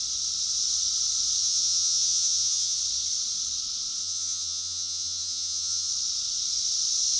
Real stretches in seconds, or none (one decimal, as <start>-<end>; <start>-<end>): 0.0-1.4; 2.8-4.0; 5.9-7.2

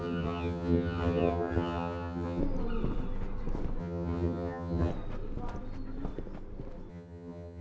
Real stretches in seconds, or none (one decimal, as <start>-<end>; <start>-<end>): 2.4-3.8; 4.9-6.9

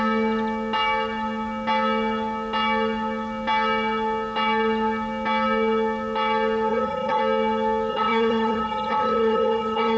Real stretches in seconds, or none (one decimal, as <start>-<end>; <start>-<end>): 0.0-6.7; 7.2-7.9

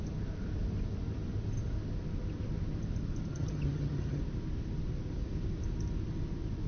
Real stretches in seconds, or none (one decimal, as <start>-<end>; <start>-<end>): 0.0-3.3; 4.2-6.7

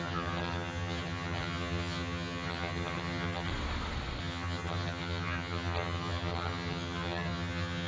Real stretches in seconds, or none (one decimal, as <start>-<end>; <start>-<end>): 3.5-4.2